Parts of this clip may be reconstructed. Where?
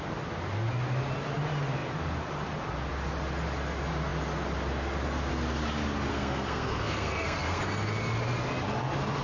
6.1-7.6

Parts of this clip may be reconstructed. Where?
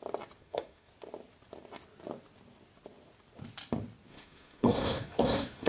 0.4-0.9; 4.1-5.7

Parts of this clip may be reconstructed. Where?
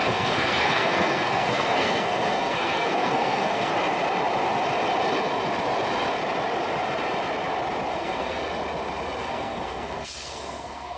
0.0-3.7; 7.9-8.4; 9.2-11.0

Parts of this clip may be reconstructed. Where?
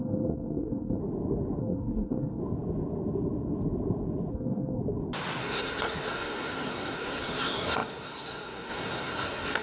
0.0-1.0; 1.6-2.4; 4.3-4.8; 5.4-9.6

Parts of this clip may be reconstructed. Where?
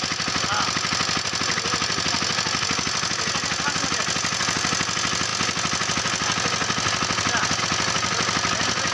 none